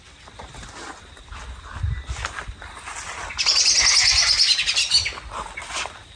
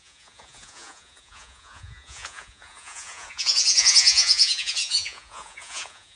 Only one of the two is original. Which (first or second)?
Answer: first